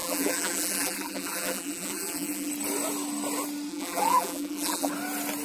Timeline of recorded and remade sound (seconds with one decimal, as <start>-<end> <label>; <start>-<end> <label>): 0.0-2.5 remade; 2.5-3.7 recorded; 3.7-4.9 remade; 4.9-5.4 recorded

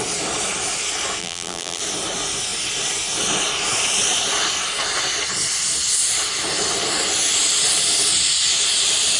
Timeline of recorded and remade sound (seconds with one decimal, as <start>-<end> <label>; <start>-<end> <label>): 0.0-1.2 recorded; 1.2-1.8 remade; 1.8-9.2 recorded

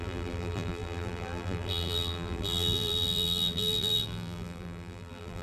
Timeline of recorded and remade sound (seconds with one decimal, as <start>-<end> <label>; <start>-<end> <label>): 0.0-5.4 remade

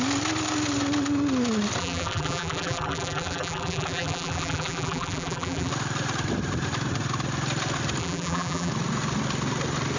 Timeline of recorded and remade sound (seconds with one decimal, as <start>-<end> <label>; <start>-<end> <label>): 0.0-1.8 recorded; 1.8-5.7 remade; 5.7-8.0 recorded; 8.0-8.7 remade; 8.7-10.0 recorded

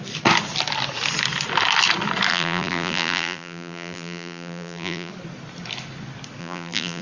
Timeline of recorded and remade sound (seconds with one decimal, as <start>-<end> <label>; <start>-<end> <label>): 0.0-2.3 recorded; 2.3-5.1 remade; 5.1-6.4 recorded; 6.4-7.0 remade